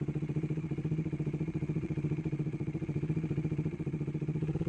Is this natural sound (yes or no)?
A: no